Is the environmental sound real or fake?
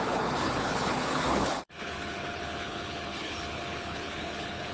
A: fake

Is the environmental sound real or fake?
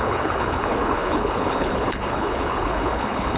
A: fake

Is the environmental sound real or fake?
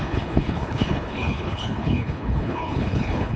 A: fake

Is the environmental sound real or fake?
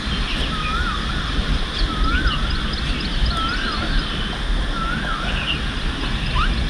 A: real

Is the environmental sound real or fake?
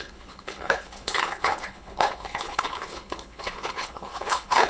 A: fake